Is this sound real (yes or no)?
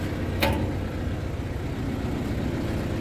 yes